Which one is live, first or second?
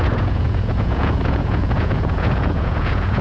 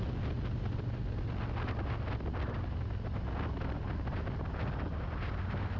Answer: second